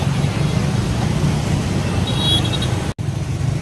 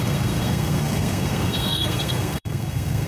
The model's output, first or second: second